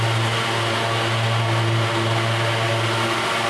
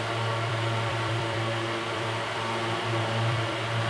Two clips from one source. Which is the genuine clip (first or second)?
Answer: first